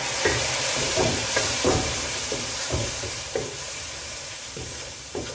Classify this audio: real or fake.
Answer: fake